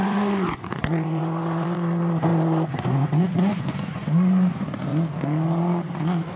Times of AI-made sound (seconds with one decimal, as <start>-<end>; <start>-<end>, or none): 0.0-4.9